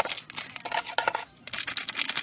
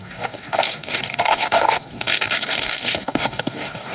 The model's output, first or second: second